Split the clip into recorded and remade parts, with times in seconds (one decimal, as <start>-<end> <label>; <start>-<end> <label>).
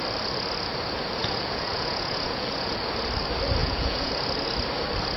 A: 0.0-1.2 recorded; 1.2-2.8 remade; 2.8-3.6 recorded; 3.6-4.1 remade; 4.1-5.2 recorded